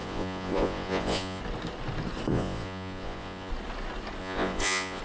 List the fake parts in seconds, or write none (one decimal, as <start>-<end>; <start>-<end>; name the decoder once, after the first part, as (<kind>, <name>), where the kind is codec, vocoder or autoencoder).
0.0-1.4 (vocoder, Vocos); 2.3-3.5; 4.2-5.0